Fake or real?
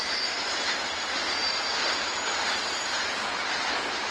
real